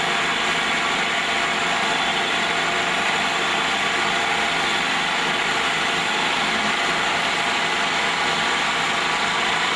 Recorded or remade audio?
recorded